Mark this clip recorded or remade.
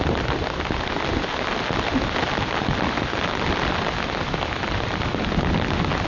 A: recorded